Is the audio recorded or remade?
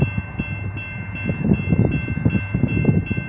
recorded